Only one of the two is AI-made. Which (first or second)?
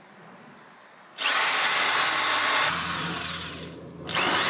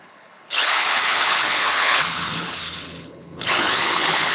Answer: second